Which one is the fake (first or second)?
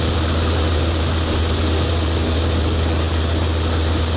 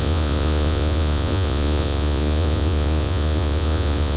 second